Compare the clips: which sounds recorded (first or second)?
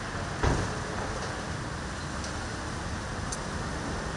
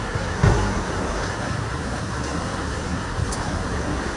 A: first